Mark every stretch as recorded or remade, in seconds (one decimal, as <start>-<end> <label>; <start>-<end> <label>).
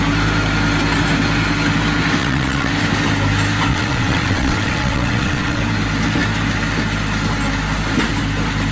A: 0.0-2.2 recorded; 2.2-2.7 remade; 2.7-3.7 recorded; 3.7-5.6 remade; 5.6-8.7 recorded